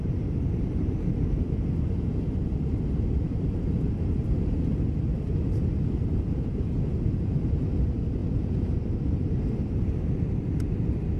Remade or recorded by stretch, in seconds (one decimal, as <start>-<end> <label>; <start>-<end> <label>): 0.0-8.2 recorded; 8.2-8.8 remade; 8.8-11.2 recorded